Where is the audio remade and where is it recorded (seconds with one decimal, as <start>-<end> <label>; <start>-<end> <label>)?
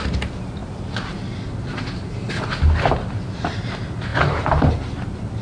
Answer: 0.0-5.4 recorded